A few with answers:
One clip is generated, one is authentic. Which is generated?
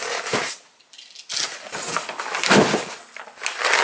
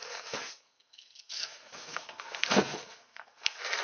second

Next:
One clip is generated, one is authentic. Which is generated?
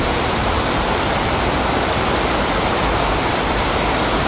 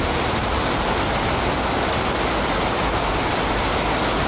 first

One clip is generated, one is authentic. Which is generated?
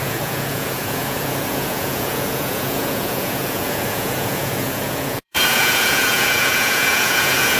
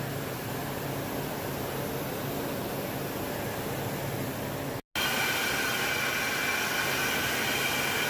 first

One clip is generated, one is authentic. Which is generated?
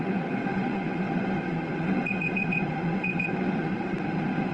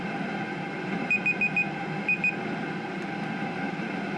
first